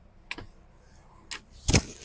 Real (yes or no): yes